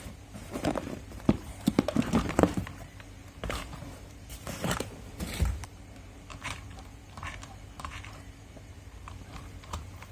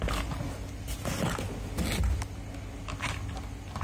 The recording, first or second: second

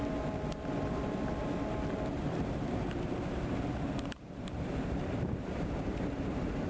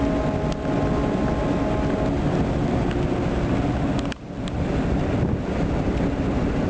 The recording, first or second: second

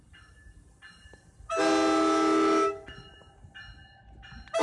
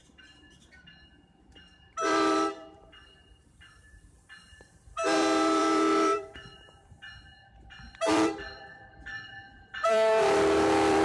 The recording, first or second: first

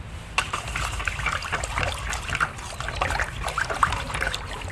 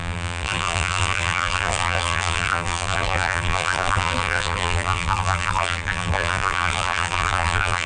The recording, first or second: first